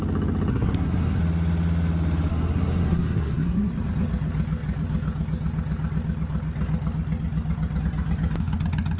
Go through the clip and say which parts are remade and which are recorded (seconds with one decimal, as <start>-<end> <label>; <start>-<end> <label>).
0.0-0.5 recorded; 0.5-1.2 remade; 1.2-2.3 recorded; 2.3-3.7 remade; 3.7-9.0 recorded